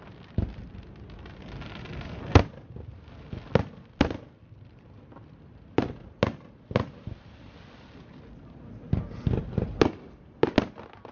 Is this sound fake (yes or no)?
no